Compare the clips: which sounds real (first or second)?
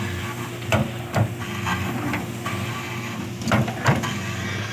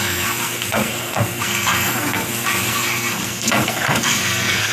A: first